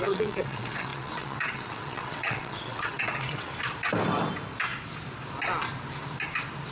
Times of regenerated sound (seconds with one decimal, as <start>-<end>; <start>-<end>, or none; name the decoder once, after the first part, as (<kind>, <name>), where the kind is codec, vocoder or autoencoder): 0.0-3.5 (vocoder, WaveNeXt)